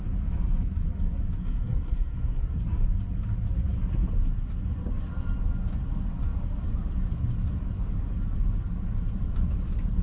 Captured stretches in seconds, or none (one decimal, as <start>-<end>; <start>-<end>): 0.0-1.4; 2.6-10.0

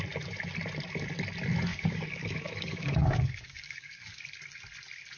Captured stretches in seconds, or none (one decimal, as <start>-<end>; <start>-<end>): 0.0-1.7; 4.2-5.2

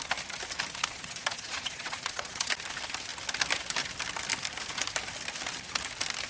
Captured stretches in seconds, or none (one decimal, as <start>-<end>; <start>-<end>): 0.0-0.9; 2.5-6.3

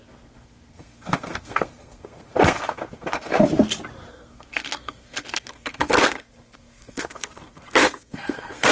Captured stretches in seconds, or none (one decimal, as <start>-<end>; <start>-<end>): 3.3-4.1

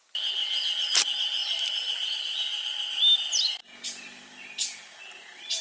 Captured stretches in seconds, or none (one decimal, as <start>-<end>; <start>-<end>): 0.0-5.6

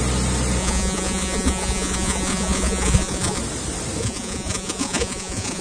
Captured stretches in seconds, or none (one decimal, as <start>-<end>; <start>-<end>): 0.0-0.6; 3.4-4.0